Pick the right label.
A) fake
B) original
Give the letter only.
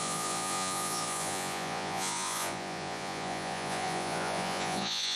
A